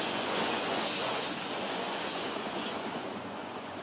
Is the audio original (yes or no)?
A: no